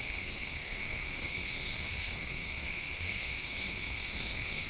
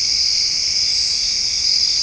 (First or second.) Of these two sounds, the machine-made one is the first